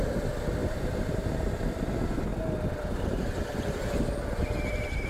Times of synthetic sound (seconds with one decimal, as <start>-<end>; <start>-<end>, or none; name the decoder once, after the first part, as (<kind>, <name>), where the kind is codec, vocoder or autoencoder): 0.6-1.4 (vocoder, BigVGAN v2)